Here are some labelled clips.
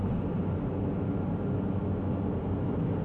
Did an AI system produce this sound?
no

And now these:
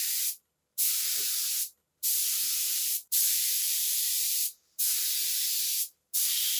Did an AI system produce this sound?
yes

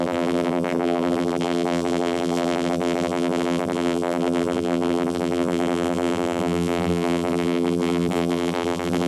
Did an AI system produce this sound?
yes